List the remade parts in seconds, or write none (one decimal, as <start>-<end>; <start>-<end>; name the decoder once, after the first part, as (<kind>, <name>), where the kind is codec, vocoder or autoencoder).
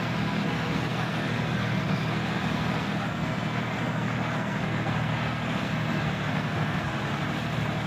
0.0-6.9 (codec, SNAC)